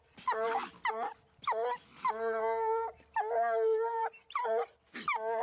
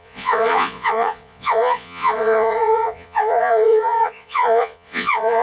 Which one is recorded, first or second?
first